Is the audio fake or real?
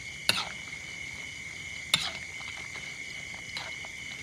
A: real